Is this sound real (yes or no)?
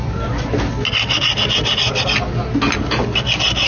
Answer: yes